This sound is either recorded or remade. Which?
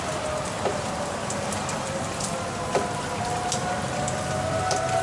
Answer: remade